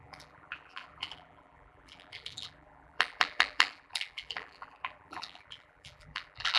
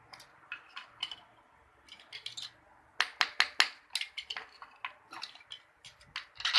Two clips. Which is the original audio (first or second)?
second